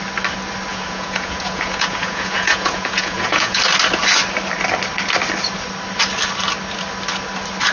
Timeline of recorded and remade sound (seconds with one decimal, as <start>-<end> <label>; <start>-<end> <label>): 0.0-0.7 recorded; 0.7-3.6 remade; 3.6-7.7 recorded